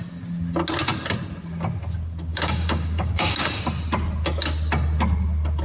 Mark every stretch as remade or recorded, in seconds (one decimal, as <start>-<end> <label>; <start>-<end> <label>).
0.0-2.3 recorded; 2.3-3.6 remade; 3.6-5.6 recorded